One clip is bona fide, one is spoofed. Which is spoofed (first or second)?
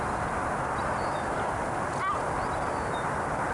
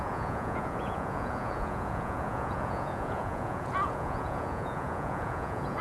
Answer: second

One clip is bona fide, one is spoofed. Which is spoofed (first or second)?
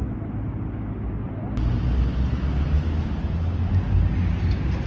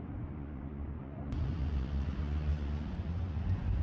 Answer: second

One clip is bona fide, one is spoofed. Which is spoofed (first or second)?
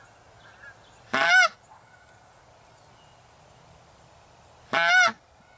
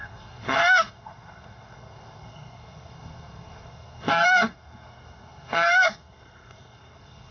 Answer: second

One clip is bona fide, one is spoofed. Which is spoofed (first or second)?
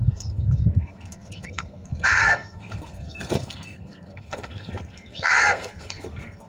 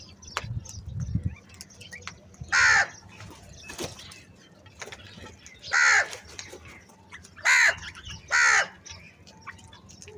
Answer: first